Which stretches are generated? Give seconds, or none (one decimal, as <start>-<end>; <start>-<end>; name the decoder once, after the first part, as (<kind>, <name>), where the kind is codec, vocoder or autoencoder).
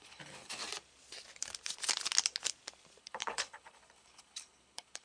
0.0-0.6 (codec, HILCodec); 3.0-5.0